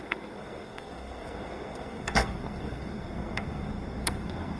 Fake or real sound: fake